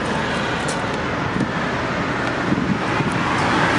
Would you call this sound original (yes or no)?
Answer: yes